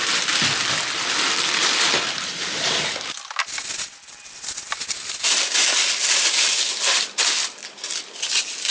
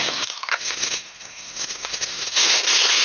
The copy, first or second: second